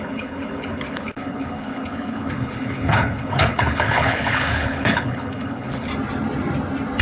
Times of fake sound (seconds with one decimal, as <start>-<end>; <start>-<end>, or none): 0.0-5.9